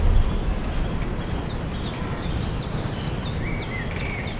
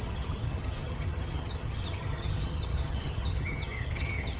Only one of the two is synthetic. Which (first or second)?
second